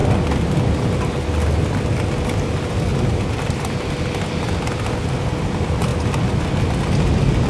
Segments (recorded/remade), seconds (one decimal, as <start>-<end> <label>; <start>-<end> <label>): 0.0-7.5 recorded